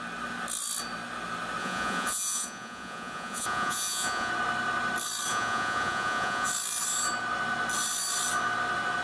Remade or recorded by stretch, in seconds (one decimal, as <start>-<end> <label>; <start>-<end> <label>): 0.0-1.6 recorded; 1.6-4.3 remade; 4.3-5.3 recorded; 5.3-6.5 remade; 6.5-9.0 recorded